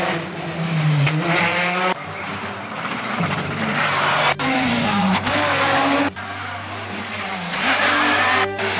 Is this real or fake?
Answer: fake